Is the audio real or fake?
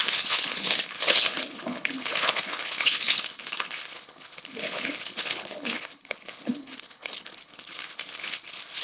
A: fake